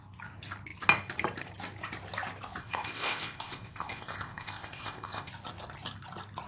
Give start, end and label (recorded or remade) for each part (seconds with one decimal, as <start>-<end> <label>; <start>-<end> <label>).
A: 0.0-2.6 recorded; 2.6-5.3 remade; 5.3-6.5 recorded